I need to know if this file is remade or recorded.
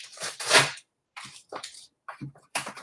remade